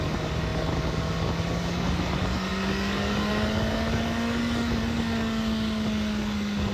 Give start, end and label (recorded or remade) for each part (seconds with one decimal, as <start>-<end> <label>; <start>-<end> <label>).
0.0-6.7 remade